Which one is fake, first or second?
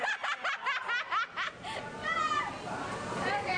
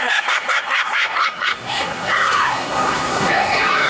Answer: second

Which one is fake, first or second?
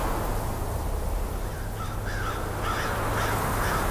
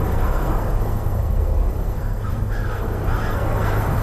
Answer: second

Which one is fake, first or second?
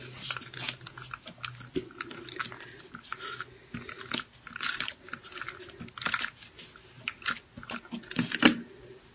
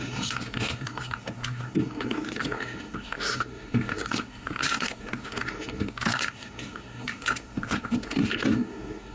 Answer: second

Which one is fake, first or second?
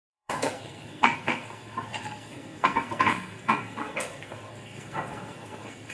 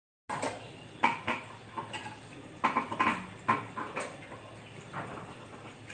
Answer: first